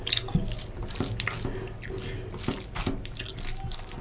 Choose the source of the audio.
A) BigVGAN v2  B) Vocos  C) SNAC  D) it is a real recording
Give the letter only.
D